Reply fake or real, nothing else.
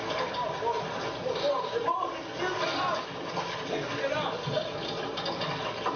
real